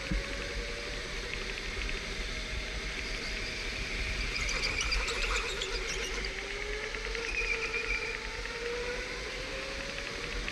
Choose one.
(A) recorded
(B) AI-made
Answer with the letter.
A